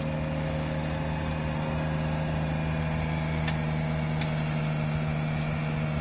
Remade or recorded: recorded